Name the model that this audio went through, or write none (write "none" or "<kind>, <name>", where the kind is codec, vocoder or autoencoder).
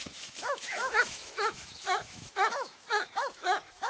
autoencoder, DAC-VAE